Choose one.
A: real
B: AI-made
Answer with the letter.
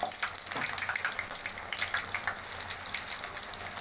A